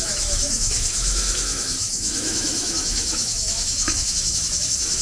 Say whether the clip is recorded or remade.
remade